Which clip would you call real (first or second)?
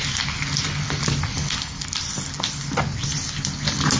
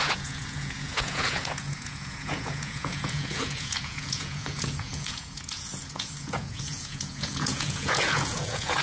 first